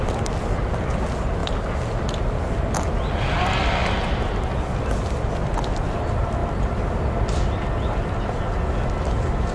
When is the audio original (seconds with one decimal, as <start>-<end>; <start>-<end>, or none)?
0.0-9.5